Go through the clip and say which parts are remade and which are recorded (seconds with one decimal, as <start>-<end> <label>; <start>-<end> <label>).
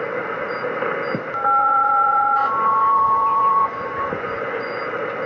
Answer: 0.0-1.6 recorded; 1.6-4.8 remade; 4.8-5.3 recorded